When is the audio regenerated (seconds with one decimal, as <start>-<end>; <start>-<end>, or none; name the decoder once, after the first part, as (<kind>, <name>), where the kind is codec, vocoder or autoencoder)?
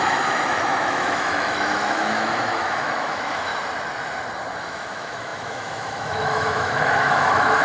0.0-3.5 (autoencoder, DAC-VAE); 4.6-7.6